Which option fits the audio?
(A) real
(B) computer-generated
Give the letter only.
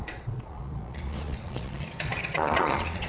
B